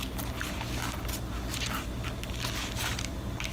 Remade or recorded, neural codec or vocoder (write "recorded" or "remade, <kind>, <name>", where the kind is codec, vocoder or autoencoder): recorded